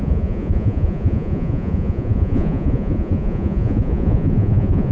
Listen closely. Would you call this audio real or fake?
fake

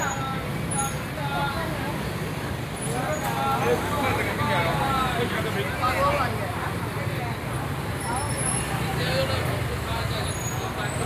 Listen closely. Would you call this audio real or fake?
real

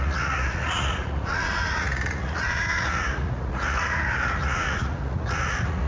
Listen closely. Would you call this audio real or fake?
fake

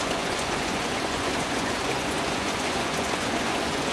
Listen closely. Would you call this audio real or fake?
fake